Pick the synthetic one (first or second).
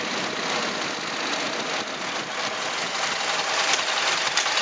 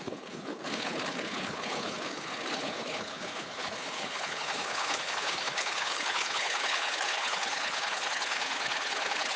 second